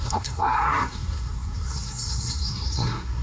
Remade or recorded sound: remade